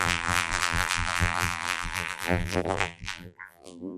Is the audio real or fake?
fake